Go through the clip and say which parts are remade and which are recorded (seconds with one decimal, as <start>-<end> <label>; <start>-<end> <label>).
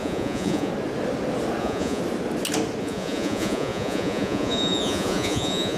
0.0-0.7 remade; 0.7-1.6 recorded; 1.6-2.0 remade; 2.0-2.8 recorded; 2.8-5.8 remade